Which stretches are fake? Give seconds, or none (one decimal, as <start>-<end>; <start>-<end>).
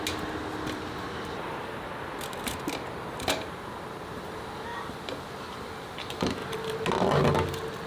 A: none